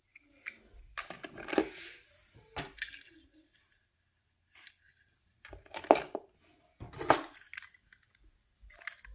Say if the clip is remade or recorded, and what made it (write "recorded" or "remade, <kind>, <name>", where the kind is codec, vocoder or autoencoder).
recorded